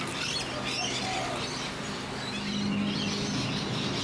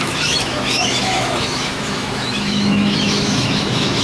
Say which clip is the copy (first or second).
second